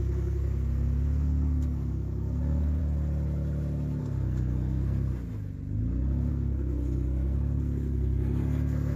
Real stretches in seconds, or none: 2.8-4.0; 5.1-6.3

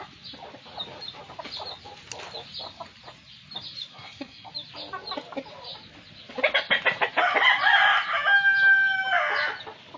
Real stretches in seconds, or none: 0.0-3.9; 4.5-10.0

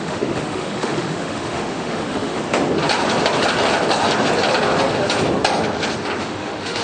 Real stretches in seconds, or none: 2.4-6.2

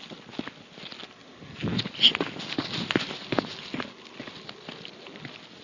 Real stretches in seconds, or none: 0.0-5.6

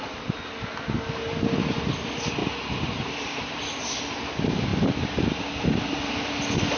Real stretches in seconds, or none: 0.0-6.8

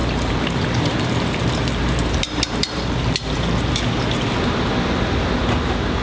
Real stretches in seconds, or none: 3.6-6.0

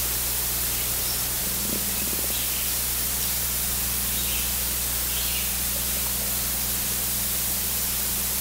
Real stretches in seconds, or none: 0.0-8.4

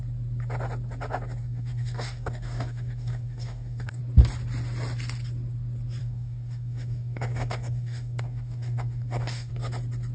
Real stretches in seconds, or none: 0.0-1.4; 4.0-6.0; 9.5-10.1